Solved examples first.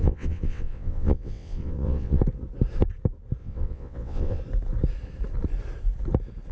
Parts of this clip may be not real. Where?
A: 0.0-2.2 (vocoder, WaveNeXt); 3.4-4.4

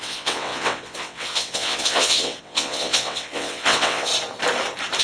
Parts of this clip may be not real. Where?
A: 0.0-4.1 (vocoder, WaveNeXt)